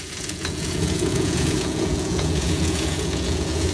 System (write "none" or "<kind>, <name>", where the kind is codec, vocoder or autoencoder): vocoder, Vocos